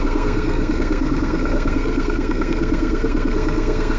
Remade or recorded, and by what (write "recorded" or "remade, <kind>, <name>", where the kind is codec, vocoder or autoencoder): remade, codec, SNAC